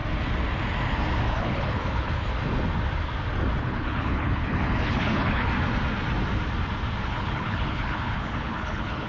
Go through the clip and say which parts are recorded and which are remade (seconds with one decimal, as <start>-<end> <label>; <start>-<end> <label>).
0.0-1.4 recorded; 1.4-2.3 remade; 2.3-3.6 recorded; 3.6-5.5 remade; 5.5-7.0 recorded; 7.0-9.1 remade